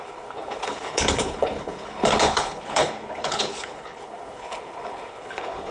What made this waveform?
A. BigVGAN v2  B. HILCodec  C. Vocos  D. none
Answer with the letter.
B